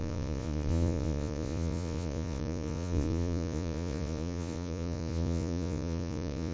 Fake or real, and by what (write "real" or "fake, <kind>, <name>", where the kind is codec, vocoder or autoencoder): fake, vocoder, Vocos